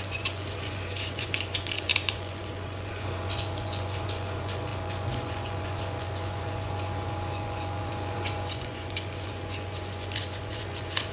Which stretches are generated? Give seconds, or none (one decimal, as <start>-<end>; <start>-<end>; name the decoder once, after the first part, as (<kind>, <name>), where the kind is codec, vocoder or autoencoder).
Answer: 0.0-11.1 (vocoder, Vocos)